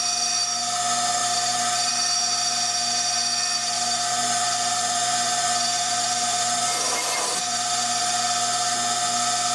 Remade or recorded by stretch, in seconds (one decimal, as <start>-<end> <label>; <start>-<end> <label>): 0.0-1.2 recorded; 1.2-1.9 remade; 1.9-3.6 recorded; 3.6-6.6 remade; 6.6-7.3 recorded; 7.3-8.2 remade; 8.2-9.5 recorded